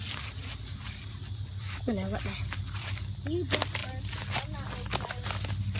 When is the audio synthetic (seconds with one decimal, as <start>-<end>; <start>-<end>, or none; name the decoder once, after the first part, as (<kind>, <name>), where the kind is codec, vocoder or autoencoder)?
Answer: none